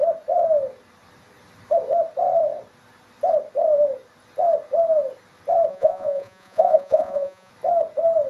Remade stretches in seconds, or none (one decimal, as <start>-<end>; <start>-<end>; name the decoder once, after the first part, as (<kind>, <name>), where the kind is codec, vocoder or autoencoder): 5.7-7.5 (vocoder, Vocos)

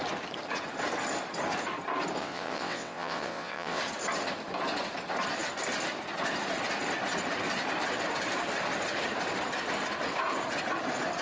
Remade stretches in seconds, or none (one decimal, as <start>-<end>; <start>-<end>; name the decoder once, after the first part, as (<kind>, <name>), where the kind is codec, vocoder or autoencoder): 2.2-3.8 (vocoder, WaveNeXt)